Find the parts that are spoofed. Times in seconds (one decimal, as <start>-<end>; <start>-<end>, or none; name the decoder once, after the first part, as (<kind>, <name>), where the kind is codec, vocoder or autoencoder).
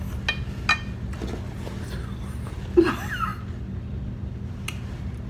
none